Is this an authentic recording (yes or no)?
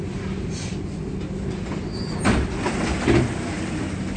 yes